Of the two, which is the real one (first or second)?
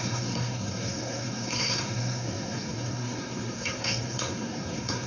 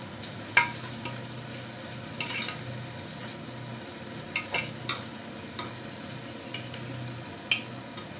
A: second